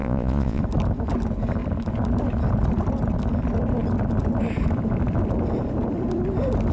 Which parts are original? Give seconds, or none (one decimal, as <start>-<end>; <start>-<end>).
0.6-6.7